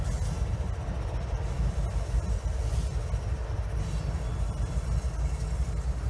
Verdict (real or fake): real